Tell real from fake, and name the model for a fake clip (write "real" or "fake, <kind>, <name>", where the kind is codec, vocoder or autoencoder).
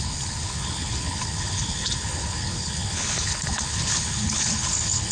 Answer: fake, codec, HILCodec